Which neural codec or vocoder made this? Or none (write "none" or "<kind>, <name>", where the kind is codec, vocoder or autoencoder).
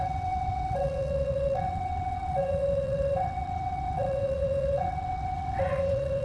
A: vocoder, WaveNeXt